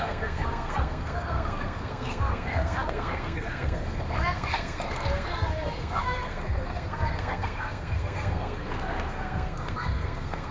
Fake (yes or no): yes